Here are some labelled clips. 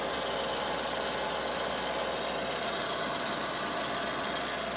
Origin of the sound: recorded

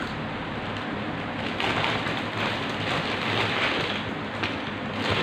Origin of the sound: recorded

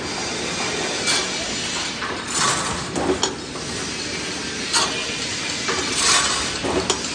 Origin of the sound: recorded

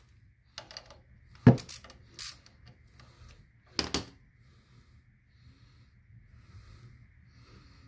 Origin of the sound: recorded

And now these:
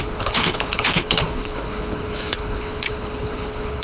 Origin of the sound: remade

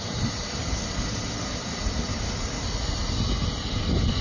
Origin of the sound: recorded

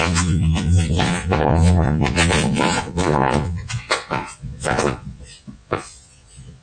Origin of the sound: remade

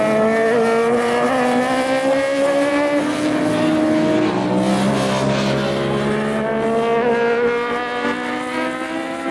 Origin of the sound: recorded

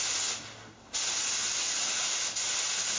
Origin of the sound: recorded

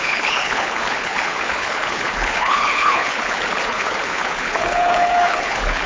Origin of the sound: remade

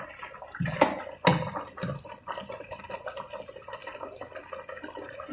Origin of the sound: recorded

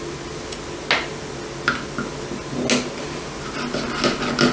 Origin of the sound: recorded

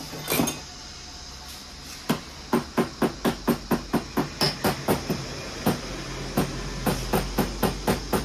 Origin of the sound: recorded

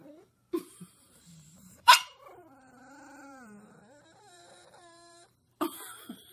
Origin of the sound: remade